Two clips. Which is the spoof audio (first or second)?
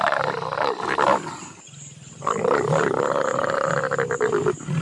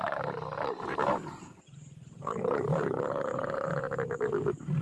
second